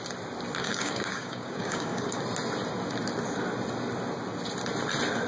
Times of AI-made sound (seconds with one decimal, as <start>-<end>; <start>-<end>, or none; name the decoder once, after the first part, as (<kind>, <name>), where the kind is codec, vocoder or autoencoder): 0.6-2.2 (codec, DAC)